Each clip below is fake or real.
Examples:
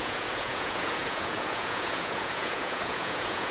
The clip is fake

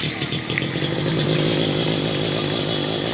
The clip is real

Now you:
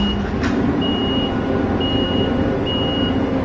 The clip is real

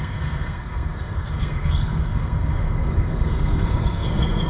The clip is fake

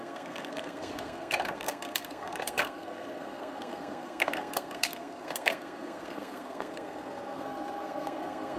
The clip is fake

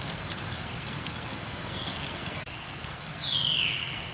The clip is fake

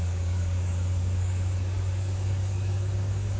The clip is fake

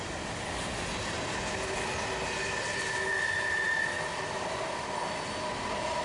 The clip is real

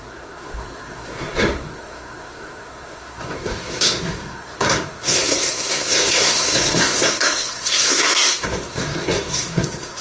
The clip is fake